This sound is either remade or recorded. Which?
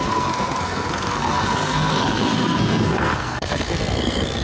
remade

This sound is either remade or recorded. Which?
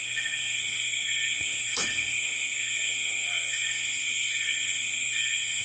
remade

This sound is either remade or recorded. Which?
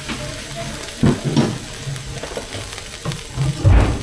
recorded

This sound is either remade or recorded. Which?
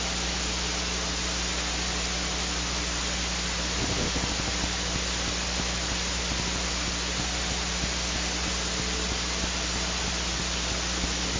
recorded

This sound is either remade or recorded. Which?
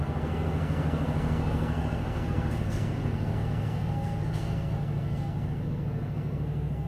remade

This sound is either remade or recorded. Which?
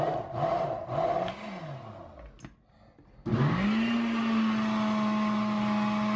recorded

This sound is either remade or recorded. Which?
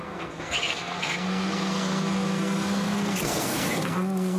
remade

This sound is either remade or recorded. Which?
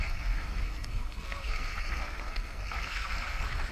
remade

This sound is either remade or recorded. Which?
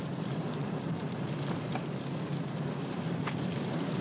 recorded